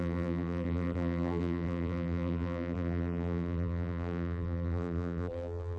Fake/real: fake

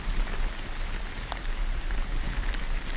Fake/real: real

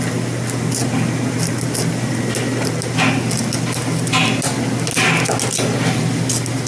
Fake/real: real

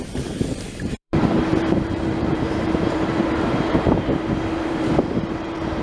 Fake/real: fake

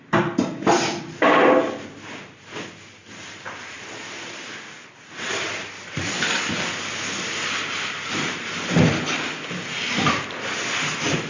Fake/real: fake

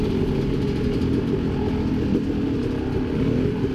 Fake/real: real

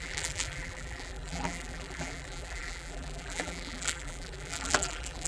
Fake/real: fake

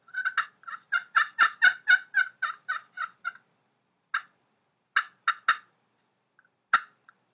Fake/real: real